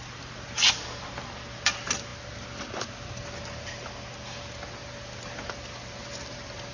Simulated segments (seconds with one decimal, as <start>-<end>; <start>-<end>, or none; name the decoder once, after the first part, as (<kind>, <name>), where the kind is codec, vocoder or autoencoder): none